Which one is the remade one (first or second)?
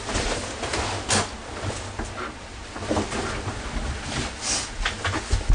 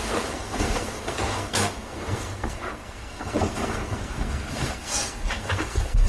second